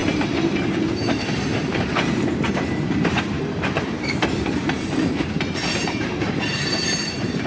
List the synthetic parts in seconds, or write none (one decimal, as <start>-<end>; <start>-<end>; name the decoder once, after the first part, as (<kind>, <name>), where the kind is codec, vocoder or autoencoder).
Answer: 0.0-7.5 (vocoder, BigVGAN v2)